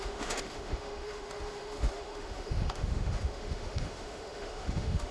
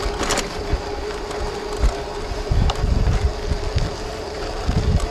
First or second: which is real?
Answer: second